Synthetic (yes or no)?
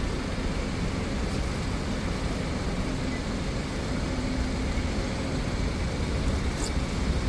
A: no